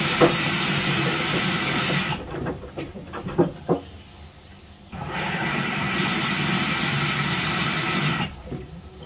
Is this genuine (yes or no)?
yes